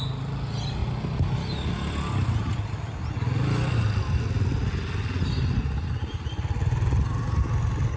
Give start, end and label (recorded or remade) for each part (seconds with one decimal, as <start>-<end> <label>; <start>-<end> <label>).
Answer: 0.0-8.0 recorded